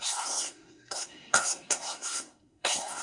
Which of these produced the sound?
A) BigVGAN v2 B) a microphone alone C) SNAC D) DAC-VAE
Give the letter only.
C